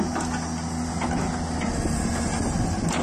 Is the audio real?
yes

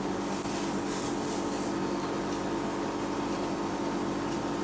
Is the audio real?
yes